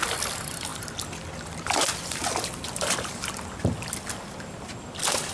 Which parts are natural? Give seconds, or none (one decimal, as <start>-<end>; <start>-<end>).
0.0-5.3